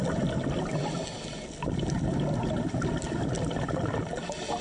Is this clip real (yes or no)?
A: yes